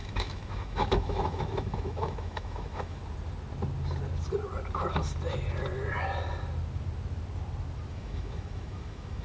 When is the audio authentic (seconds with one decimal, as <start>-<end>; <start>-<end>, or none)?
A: 3.0-7.9